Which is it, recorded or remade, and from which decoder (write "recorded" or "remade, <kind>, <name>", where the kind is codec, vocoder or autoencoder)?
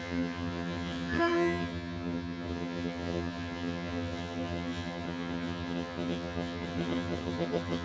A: remade, vocoder, HiFi-GAN